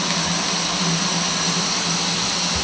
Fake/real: real